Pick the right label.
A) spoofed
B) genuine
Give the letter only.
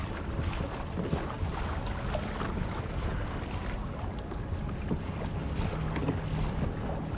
B